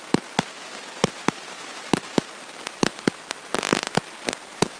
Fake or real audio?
real